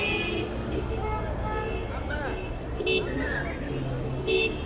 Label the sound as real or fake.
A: real